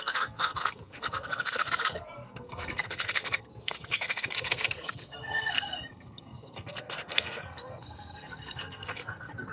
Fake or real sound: fake